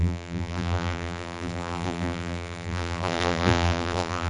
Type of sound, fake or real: fake